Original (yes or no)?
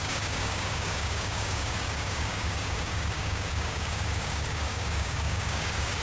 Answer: no